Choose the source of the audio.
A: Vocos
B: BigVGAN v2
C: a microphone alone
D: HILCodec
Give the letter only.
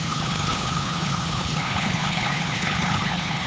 D